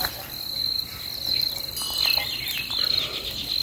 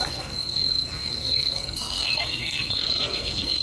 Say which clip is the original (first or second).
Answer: first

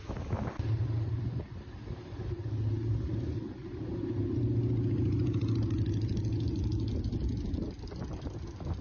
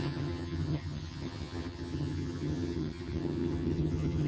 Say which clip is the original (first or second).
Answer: first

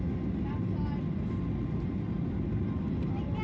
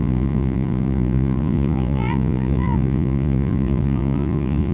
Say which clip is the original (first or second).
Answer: first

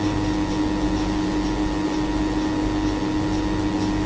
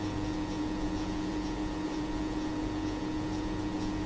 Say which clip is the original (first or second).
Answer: first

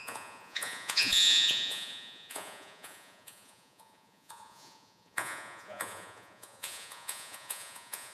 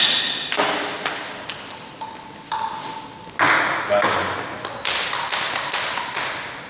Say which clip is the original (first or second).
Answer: second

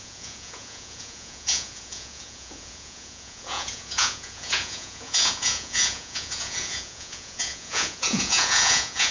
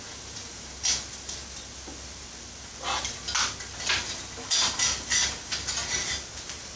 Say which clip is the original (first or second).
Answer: second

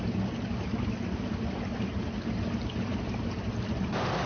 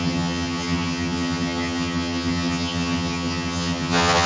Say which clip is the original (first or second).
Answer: first